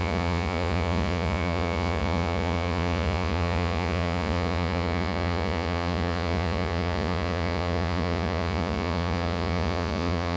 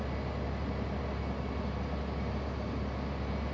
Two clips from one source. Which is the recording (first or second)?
second